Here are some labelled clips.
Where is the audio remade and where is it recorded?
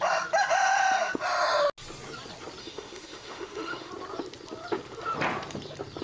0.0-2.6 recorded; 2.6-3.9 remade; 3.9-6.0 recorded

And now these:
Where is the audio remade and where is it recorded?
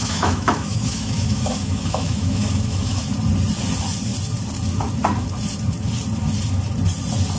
0.0-3.0 remade; 3.0-7.4 recorded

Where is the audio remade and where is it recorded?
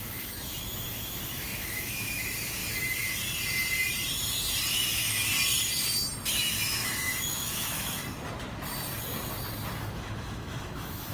0.0-2.6 remade; 2.6-4.7 recorded; 4.7-5.3 remade; 5.3-6.3 recorded; 6.3-8.0 remade; 8.0-9.8 recorded; 9.8-11.1 remade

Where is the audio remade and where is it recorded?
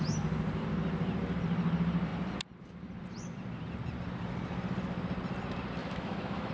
0.0-5.8 recorded; 5.8-6.5 remade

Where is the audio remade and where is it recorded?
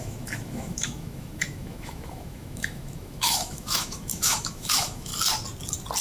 0.0-5.1 remade; 5.1-6.0 recorded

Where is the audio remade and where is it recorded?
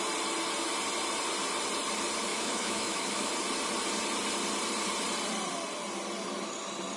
0.0-2.3 recorded; 2.3-3.3 remade; 3.3-7.0 recorded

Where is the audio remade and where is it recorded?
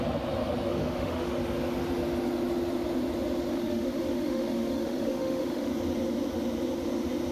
0.0-0.7 recorded; 0.7-1.3 remade; 1.3-3.5 recorded; 3.5-5.7 remade; 5.7-7.3 recorded